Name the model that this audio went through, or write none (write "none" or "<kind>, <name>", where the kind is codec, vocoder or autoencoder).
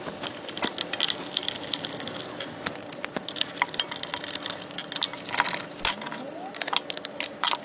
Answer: none